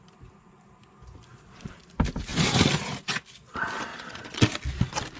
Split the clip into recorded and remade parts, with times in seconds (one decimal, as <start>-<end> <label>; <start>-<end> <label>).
0.0-1.3 recorded; 1.3-1.8 remade; 1.8-3.9 recorded; 3.9-4.5 remade; 4.5-5.2 recorded